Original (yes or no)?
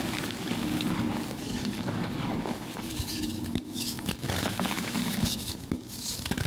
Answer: no